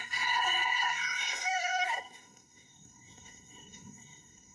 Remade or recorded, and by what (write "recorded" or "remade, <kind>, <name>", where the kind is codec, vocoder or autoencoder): remade, codec, SNAC